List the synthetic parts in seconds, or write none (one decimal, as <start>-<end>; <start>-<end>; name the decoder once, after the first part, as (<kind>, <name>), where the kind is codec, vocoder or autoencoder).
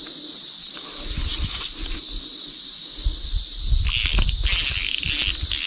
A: none